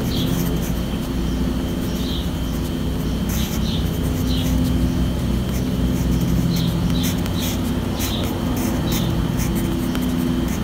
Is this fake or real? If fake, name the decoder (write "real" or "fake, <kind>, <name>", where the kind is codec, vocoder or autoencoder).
real